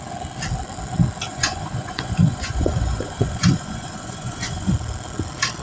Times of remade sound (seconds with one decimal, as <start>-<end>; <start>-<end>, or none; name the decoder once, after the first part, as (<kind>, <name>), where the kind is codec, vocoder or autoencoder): 1.3-4.7 (vocoder, Vocos)